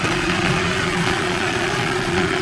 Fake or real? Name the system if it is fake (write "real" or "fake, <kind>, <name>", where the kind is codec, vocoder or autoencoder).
fake, vocoder, Vocos